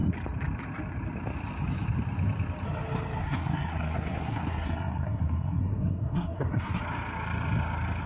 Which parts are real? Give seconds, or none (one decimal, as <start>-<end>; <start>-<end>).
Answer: 0.0-3.2; 6.8-8.1